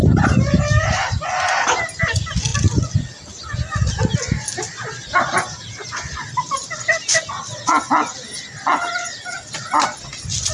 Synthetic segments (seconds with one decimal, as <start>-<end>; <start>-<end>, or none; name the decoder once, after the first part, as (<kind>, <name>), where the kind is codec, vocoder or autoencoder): 2.5-3.5 (vocoder, BigVGAN v2)